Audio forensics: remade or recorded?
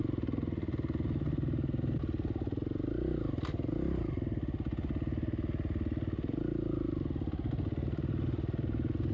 recorded